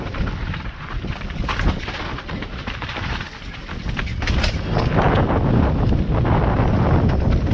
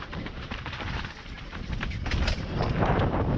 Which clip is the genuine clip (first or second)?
first